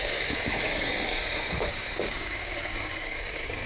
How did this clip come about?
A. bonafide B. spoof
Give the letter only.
B